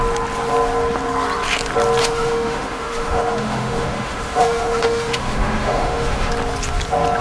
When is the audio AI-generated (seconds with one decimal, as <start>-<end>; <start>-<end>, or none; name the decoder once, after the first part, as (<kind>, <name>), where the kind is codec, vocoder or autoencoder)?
2.0-6.3 (autoencoder, DAC-VAE)